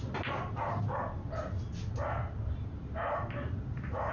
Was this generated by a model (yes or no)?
no